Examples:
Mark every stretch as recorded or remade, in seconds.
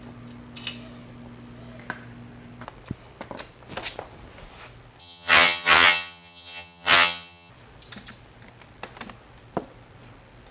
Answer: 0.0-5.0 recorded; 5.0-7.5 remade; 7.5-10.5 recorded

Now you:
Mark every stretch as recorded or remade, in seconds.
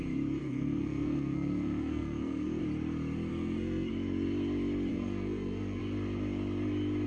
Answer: 0.0-0.4 recorded; 0.4-2.6 remade; 2.6-3.3 recorded; 3.3-3.9 remade; 3.9-4.9 recorded; 4.9-5.8 remade; 5.8-7.1 recorded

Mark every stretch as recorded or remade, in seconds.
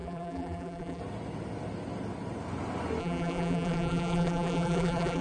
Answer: 0.0-1.0 remade; 1.0-3.0 recorded; 3.0-5.2 remade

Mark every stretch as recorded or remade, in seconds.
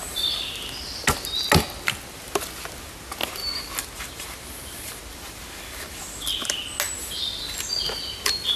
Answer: 0.0-8.6 recorded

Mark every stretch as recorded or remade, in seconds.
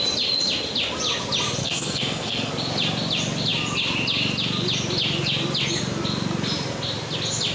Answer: 0.0-1.6 recorded; 1.6-2.5 remade; 2.5-7.5 recorded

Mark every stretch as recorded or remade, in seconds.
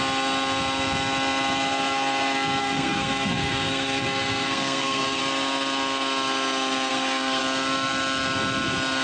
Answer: 0.0-2.6 recorded; 2.6-5.2 remade; 5.2-6.9 recorded; 6.9-7.4 remade; 7.4-9.0 recorded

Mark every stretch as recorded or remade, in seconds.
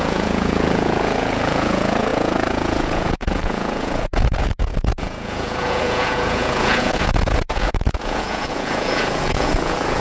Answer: 0.0-10.0 remade